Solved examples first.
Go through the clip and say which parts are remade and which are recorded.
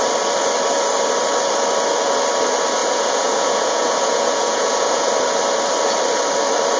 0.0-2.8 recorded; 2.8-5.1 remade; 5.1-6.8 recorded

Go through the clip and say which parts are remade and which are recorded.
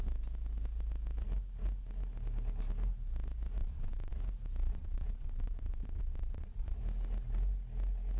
0.0-3.6 recorded; 3.6-4.1 remade; 4.1-4.6 recorded; 4.6-6.8 remade; 6.8-8.2 recorded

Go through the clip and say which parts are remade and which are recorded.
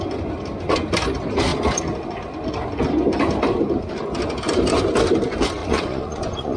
0.0-5.6 recorded; 5.6-6.6 remade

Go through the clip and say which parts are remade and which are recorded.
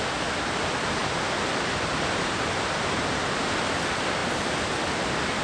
0.0-5.4 recorded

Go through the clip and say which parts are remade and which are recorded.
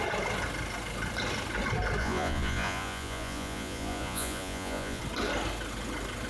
0.0-2.0 recorded; 2.0-5.0 remade; 5.0-6.3 recorded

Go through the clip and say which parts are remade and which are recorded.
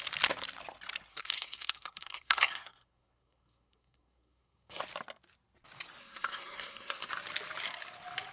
0.0-1.1 recorded; 1.1-4.8 remade; 4.8-6.0 recorded; 6.0-7.1 remade; 7.1-8.3 recorded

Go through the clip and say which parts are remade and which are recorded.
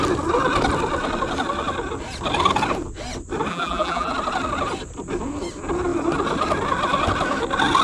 0.0-3.5 recorded; 3.5-4.1 remade; 4.1-7.8 recorded